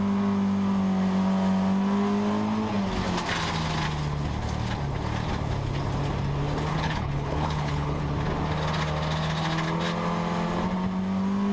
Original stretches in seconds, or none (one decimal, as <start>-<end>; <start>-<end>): 0.0-6.7; 8.0-11.5